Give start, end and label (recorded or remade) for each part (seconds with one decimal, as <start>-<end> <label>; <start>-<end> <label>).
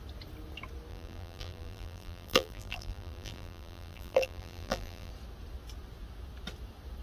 0.0-0.9 recorded; 0.9-5.1 remade; 5.1-7.0 recorded